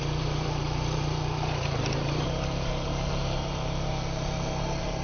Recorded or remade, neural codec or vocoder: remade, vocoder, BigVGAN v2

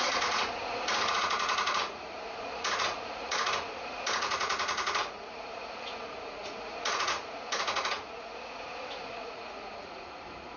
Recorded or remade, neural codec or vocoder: remade, vocoder, Vocos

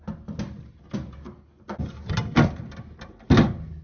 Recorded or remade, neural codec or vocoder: recorded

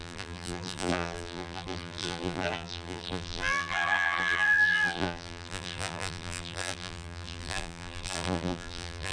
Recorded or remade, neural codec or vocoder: remade, vocoder, BigVGAN v2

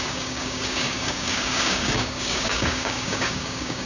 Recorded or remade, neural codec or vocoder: remade, codec, DAC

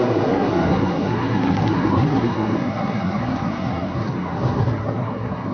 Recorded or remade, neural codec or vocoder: remade, codec, SNAC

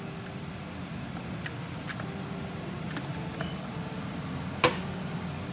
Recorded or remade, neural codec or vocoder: recorded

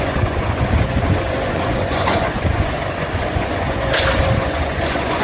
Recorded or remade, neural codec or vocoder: remade, vocoder, Vocos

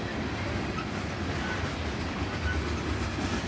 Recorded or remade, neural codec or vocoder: recorded